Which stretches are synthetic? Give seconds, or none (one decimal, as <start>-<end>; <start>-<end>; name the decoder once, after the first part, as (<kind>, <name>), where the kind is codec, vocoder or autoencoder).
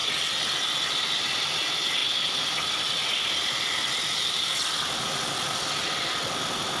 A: none